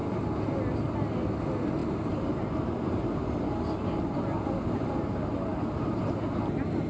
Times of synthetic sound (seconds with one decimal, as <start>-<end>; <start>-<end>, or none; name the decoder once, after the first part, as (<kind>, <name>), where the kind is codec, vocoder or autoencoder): 0.0-0.5 (vocoder, BigVGAN v2); 1.8-3.2; 5.5-6.0